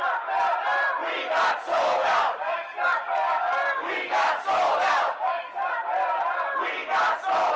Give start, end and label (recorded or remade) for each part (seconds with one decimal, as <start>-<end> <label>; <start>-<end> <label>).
0.0-1.7 recorded; 1.7-5.7 remade; 5.7-7.6 recorded